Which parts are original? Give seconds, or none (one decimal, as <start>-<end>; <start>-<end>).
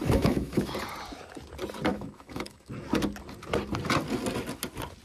0.7-1.9; 2.7-5.0